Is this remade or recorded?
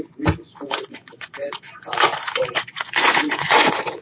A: remade